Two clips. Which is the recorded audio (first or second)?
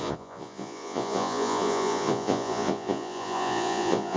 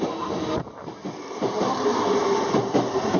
second